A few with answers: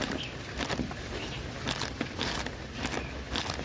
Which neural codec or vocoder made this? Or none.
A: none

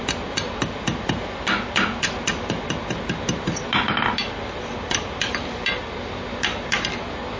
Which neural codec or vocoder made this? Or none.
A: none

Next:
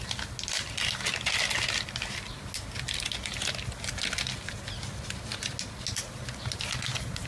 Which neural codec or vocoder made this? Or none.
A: none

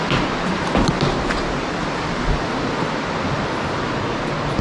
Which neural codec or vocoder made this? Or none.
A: none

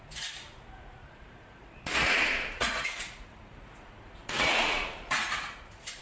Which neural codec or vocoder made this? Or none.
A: vocoder, Vocos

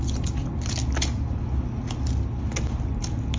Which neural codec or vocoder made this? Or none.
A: none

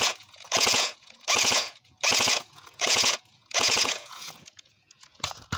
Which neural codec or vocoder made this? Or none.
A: vocoder, Vocos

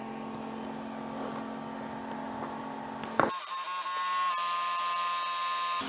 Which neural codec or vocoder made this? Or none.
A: none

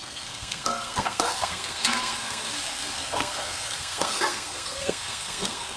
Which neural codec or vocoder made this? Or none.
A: codec, SNAC